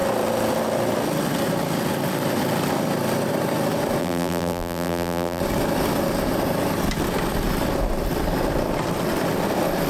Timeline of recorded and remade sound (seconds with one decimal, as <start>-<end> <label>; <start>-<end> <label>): 0.0-4.0 recorded; 4.0-5.4 remade; 5.4-9.9 recorded